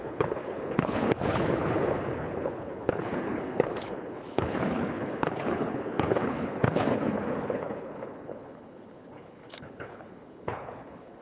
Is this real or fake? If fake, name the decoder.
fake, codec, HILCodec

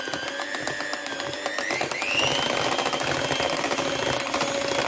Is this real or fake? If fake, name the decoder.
real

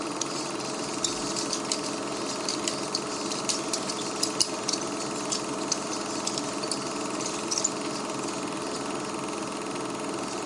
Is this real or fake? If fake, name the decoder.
real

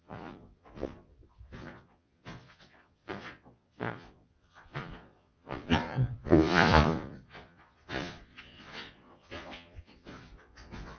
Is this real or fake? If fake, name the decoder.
fake, vocoder, Vocos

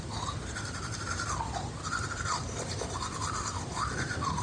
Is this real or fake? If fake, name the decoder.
fake, vocoder, BigVGAN v2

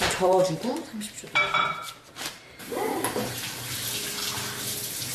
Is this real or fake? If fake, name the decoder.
fake, vocoder, BigVGAN v2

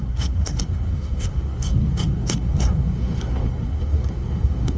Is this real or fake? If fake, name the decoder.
fake, codec, SNAC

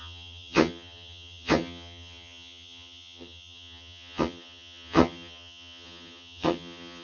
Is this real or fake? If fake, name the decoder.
fake, vocoder, HiFi-GAN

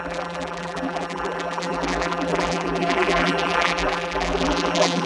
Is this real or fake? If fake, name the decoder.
fake, vocoder, BigVGAN v2